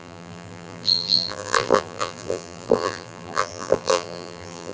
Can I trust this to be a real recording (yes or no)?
no